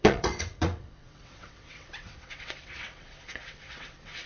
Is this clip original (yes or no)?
no